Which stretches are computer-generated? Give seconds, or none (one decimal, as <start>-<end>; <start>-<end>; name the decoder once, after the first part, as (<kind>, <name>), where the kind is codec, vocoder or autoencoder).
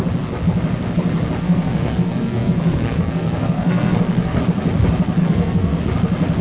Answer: 1.4-4.4 (codec, SNAC); 5.2-5.8